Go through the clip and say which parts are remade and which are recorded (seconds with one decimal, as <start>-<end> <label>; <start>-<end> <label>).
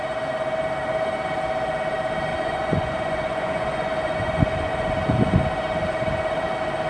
0.0-2.3 recorded; 2.3-4.7 remade; 4.7-6.9 recorded